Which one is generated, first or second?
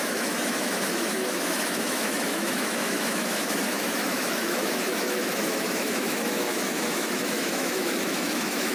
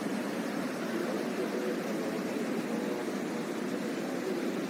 first